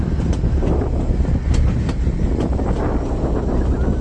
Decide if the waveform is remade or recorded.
recorded